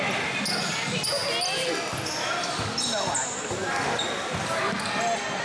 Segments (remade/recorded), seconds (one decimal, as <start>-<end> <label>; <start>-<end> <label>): 0.0-5.4 recorded